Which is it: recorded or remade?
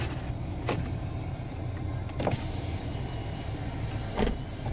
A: remade